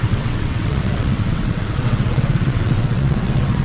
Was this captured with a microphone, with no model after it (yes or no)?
no